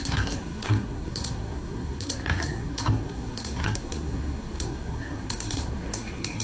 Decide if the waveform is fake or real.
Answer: fake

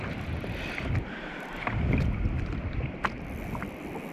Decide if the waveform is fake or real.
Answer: real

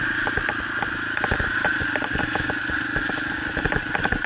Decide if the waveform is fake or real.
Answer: real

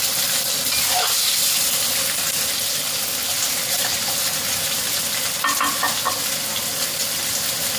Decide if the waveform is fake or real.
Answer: real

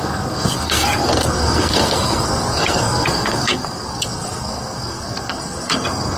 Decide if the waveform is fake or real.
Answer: fake